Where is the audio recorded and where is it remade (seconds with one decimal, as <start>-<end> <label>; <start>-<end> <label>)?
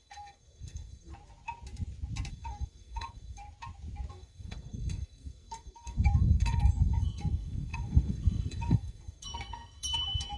0.0-1.1 remade; 1.1-2.3 recorded; 2.3-3.4 remade; 3.4-4.1 recorded; 4.1-10.4 remade